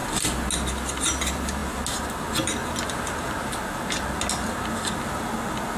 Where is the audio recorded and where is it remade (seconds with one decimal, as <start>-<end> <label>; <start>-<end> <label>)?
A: 0.0-5.8 recorded